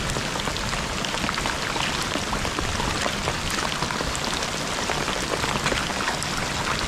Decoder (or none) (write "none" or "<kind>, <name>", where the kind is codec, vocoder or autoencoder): none